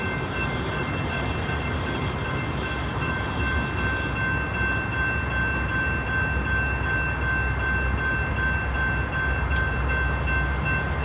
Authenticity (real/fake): real